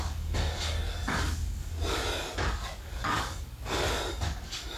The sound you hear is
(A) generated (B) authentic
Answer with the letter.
A